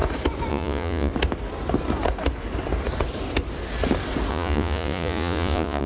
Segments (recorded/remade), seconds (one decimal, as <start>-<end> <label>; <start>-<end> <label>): 0.0-0.5 recorded; 0.5-1.1 remade; 1.1-4.3 recorded; 4.3-5.9 remade

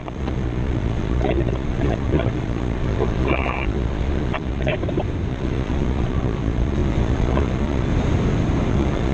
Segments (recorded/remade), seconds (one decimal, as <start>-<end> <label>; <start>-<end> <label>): 0.0-4.7 remade; 4.7-5.3 recorded; 5.3-7.9 remade; 7.9-8.7 recorded; 8.7-9.1 remade